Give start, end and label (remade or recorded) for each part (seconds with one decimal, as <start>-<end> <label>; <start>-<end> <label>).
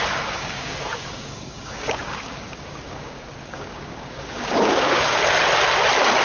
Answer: 0.0-5.2 remade; 5.2-6.2 recorded